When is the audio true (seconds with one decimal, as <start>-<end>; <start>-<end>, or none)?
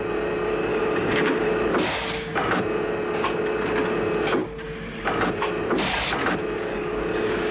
0.0-0.7; 1.5-6.7